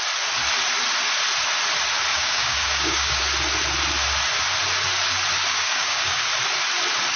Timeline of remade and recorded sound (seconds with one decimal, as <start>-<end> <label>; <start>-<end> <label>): 0.0-2.1 recorded; 2.1-3.2 remade; 3.2-5.5 recorded; 5.5-6.3 remade; 6.3-7.2 recorded